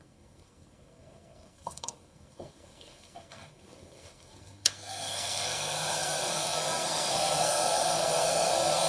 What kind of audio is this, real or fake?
fake